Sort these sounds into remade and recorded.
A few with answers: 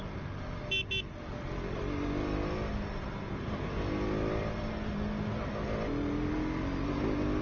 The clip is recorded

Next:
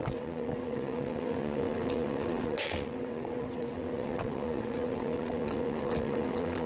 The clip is remade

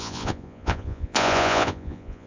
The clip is remade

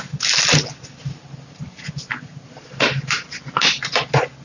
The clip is recorded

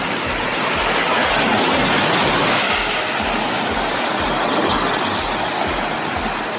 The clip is recorded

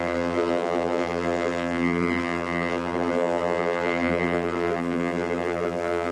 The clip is remade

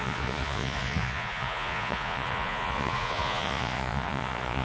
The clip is remade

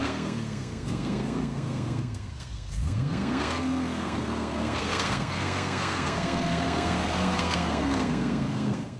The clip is remade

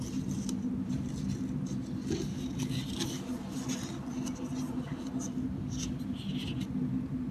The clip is recorded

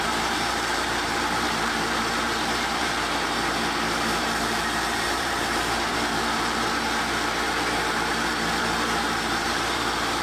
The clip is remade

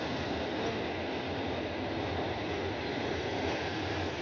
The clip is recorded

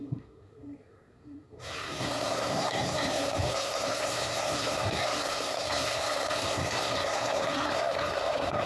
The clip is remade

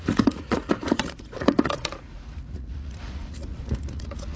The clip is remade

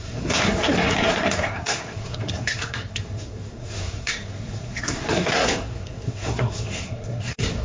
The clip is remade